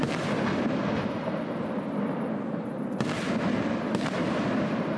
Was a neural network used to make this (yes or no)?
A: no